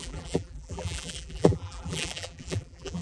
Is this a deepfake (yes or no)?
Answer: yes